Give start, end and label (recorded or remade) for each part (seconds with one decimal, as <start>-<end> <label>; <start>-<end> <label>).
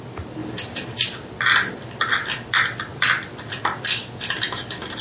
0.0-0.4 recorded; 0.4-1.0 remade; 1.0-2.9 recorded; 2.9-3.9 remade; 3.9-5.0 recorded